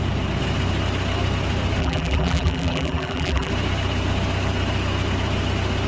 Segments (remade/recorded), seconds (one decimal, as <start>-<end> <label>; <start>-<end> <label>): 0.0-1.8 recorded; 1.8-3.5 remade; 3.5-5.9 recorded